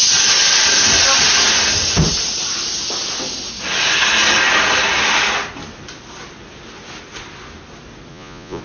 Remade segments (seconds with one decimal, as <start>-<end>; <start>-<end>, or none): 8.1-8.6